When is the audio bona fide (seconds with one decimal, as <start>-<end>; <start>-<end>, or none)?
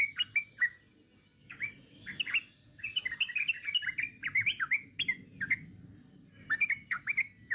0.0-7.5